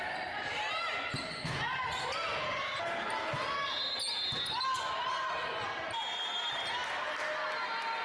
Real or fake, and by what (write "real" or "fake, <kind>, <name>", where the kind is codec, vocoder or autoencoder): real